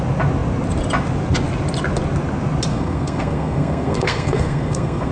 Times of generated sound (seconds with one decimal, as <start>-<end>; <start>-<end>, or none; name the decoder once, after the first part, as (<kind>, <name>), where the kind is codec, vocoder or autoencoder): 2.7-5.1 (codec, SNAC)